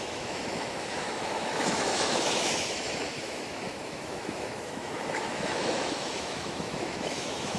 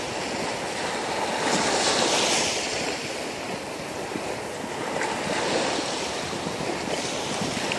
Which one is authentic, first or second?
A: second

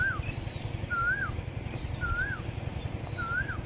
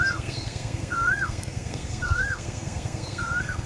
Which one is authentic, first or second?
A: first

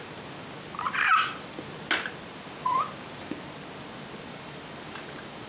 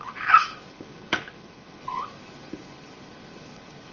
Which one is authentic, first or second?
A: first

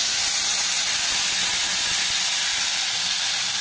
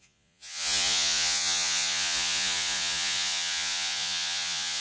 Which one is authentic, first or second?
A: first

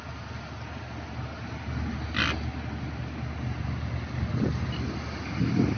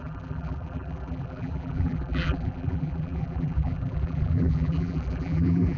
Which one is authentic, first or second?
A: first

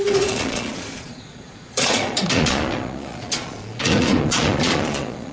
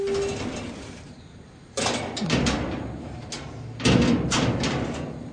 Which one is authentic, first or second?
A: second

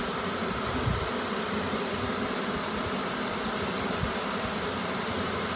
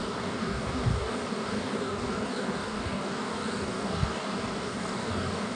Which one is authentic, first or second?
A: first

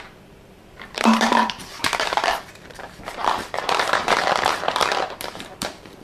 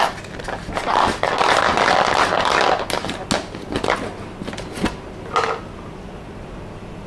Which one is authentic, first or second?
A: second